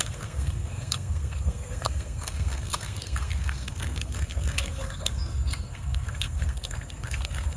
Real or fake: fake